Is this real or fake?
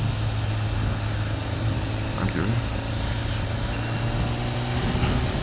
real